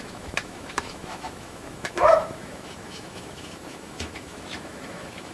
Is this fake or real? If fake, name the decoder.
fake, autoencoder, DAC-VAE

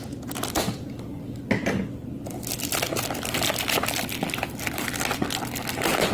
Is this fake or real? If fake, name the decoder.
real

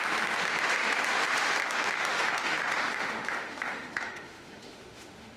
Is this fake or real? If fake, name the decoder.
fake, autoencoder, DAC-VAE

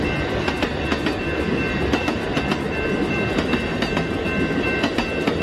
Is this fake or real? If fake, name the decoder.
real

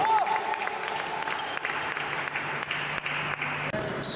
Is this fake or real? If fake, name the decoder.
real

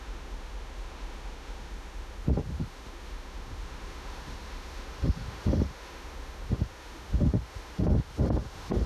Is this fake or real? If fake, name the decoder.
fake, autoencoder, DAC-VAE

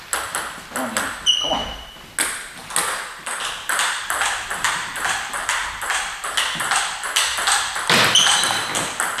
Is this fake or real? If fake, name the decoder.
real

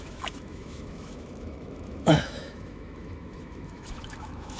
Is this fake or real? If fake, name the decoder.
fake, autoencoder, DAC-VAE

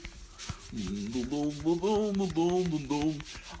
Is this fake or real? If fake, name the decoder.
real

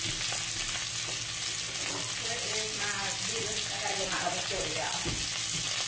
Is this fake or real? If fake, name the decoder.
real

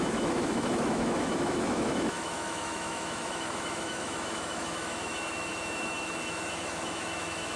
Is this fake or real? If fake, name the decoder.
fake, autoencoder, DAC-VAE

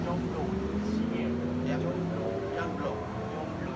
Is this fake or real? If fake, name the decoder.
real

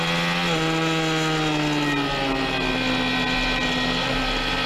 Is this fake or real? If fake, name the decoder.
real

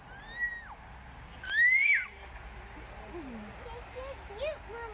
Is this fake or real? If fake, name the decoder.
real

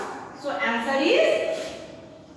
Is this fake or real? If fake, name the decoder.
fake, autoencoder, DAC-VAE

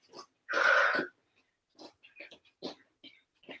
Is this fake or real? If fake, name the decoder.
real